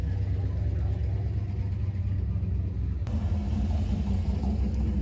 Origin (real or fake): real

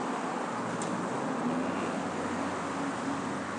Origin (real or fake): real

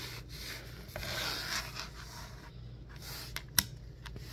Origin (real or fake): real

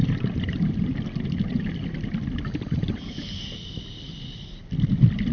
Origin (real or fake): real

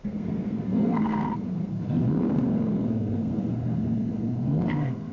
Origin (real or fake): fake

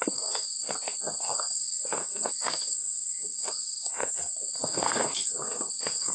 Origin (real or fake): fake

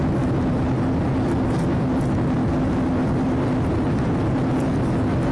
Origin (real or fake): real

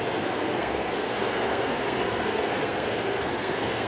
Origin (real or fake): fake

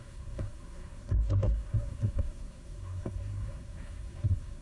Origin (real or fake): fake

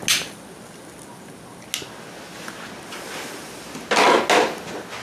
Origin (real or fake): real